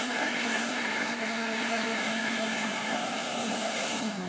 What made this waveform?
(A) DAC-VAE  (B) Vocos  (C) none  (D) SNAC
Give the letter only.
D